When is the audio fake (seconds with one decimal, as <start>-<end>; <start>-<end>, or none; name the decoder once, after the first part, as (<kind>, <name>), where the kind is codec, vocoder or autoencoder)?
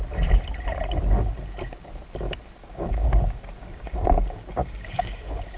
2.6-5.6 (codec, DAC)